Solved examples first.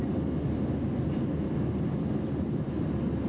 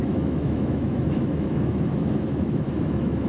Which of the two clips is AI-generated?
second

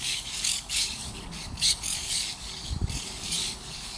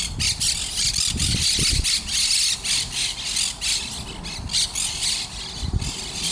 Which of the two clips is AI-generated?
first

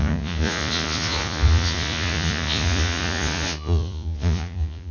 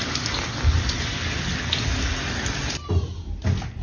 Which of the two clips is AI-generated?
first